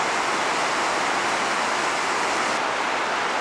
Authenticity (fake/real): real